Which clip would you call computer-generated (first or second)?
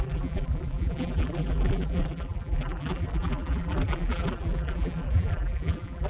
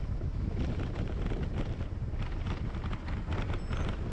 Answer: first